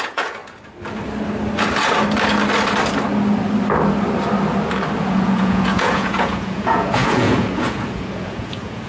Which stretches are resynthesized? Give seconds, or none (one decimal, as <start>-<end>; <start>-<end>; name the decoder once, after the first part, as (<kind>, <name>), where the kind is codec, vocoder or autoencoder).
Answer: 0.0-0.4 (vocoder, Vocos); 5.0-8.9